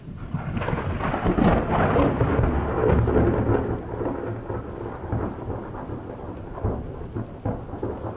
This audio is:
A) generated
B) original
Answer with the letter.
B